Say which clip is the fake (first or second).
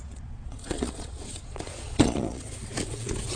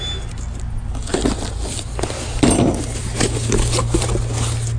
first